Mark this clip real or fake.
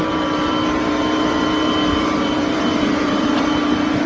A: fake